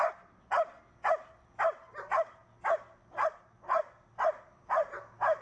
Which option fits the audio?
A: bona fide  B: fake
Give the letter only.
A